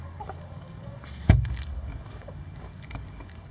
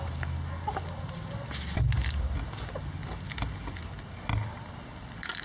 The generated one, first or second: first